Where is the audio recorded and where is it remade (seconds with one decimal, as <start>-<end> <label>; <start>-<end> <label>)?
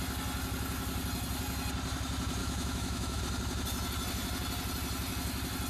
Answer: 0.0-2.4 recorded; 2.4-3.2 remade; 3.2-5.7 recorded